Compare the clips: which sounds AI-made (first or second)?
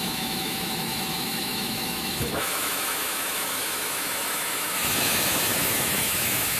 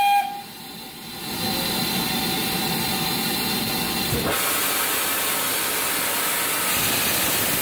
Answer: first